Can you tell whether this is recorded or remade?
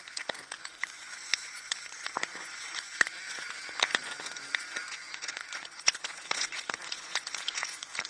remade